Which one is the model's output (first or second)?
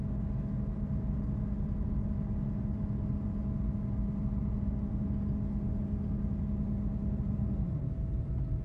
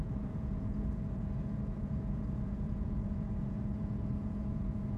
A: second